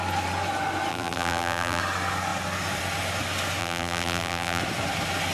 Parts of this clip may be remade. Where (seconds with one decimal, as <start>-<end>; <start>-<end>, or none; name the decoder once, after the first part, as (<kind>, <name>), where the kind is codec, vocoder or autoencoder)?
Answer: 0.9-1.8 (vocoder, BigVGAN v2); 3.6-4.6